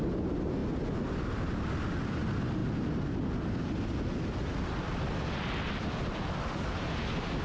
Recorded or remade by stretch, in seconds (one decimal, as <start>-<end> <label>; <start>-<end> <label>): 0.0-7.4 recorded